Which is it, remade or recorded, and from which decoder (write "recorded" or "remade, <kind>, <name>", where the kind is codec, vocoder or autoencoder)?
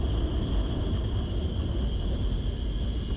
recorded